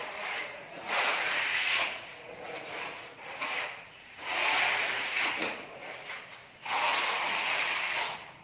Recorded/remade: remade